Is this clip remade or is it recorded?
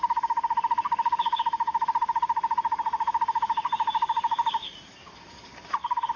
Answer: remade